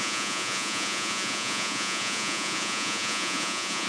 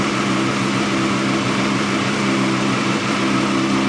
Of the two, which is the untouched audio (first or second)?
second